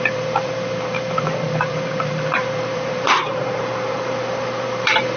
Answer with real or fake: fake